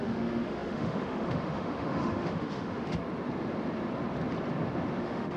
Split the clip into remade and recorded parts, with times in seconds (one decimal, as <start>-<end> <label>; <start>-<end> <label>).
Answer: 0.0-3.0 remade; 3.0-5.0 recorded; 5.0-5.4 remade